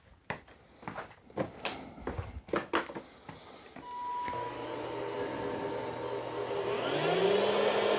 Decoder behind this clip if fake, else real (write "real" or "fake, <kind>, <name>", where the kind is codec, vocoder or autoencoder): real